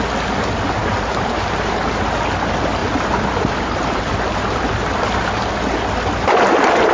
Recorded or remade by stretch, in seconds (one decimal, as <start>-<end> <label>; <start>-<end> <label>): 0.0-0.8 recorded; 0.8-2.1 remade; 2.1-2.8 recorded; 2.8-4.0 remade; 4.0-6.9 recorded